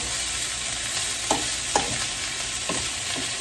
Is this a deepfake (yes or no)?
no